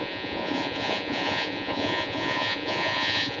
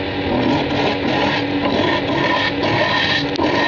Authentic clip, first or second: second